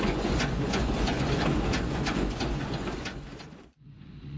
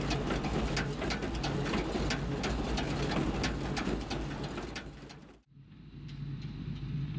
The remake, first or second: first